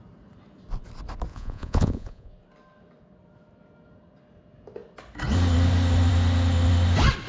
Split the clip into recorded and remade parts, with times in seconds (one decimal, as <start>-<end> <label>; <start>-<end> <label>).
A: 0.0-1.3 recorded; 1.3-2.3 remade; 2.3-7.3 recorded